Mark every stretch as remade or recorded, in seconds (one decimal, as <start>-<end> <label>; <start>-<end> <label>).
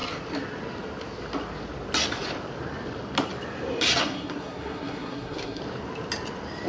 0.0-4.0 recorded; 4.0-5.6 remade; 5.6-6.7 recorded